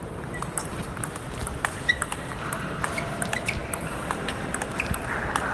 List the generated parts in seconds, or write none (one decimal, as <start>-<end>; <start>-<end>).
0.0-1.4; 3.2-5.5